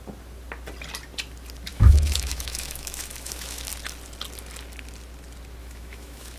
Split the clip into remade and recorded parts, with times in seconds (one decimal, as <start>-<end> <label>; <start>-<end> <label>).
0.0-1.7 recorded; 1.7-3.7 remade; 3.7-5.6 recorded; 5.6-6.4 remade